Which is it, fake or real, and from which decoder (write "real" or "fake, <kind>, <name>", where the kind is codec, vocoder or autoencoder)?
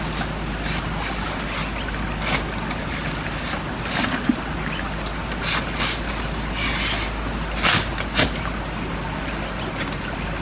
real